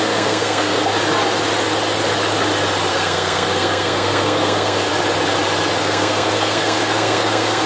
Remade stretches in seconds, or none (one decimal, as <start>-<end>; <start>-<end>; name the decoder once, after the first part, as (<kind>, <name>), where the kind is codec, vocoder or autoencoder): 0.0-0.9 (codec, SNAC); 2.9-4.9; 5.8-7.7